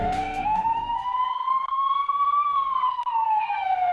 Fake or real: fake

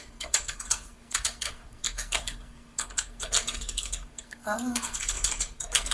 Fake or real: fake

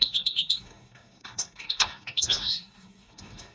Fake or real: fake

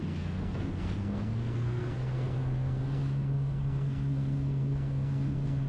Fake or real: fake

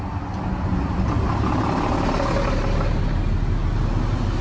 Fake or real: real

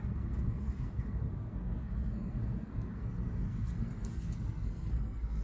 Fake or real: fake